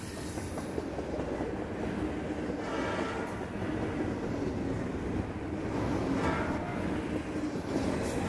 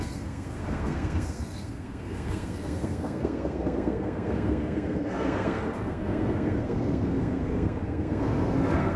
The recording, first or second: first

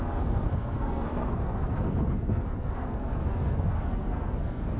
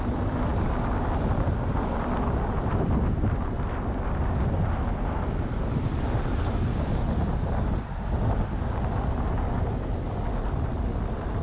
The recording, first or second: second